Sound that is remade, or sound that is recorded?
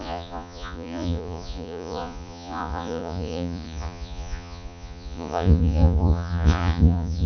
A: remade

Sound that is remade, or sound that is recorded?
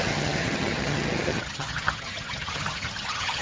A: remade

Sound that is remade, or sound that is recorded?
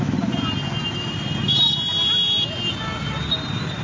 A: recorded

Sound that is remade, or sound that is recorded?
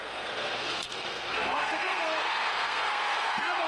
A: remade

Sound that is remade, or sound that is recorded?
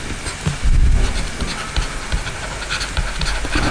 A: recorded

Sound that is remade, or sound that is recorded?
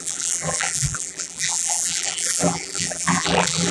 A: remade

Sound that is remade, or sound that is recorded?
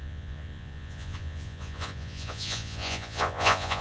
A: remade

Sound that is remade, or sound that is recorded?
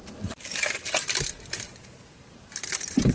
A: remade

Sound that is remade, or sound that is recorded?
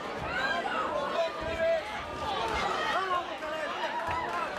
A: recorded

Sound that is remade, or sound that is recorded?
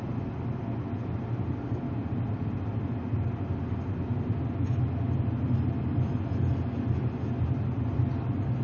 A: recorded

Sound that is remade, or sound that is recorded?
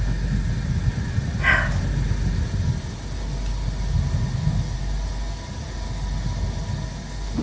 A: recorded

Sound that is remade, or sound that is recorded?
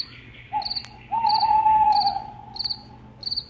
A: recorded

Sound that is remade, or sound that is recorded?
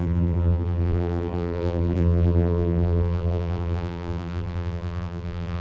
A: remade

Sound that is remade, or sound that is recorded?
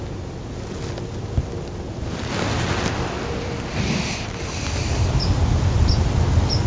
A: recorded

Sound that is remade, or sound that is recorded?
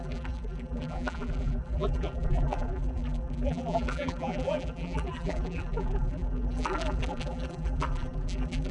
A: remade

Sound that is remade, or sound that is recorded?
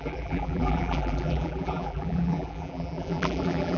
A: remade